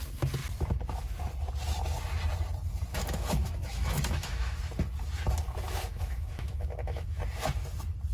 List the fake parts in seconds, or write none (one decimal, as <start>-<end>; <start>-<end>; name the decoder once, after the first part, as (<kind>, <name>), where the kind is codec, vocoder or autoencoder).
2.9-4.6 (autoencoder, DAC-VAE); 5.9-7.2